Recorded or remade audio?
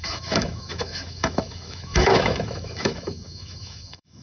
remade